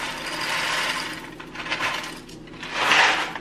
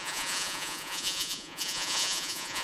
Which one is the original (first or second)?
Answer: first